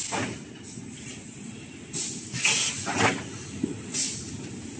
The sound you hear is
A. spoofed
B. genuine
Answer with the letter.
B